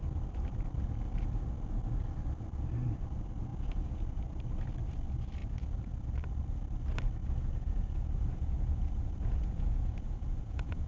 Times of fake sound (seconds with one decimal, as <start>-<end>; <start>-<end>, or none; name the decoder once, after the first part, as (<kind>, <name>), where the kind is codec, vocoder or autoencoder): 3.5-4.2 (vocoder, Vocos); 7.2-10.9